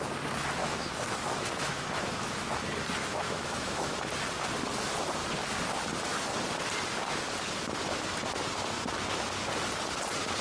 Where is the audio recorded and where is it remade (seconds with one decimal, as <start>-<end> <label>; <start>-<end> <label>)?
0.0-0.6 recorded; 0.6-2.6 remade; 2.6-3.0 recorded; 3.0-4.0 remade; 4.0-10.4 recorded